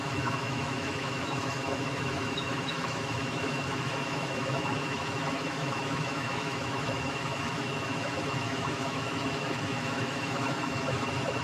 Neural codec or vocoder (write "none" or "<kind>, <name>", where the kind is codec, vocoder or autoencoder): autoencoder, DAC-VAE